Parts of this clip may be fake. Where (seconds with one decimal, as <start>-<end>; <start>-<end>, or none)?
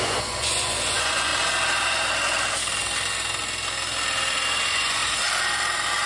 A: 0.0-1.3; 4.6-5.0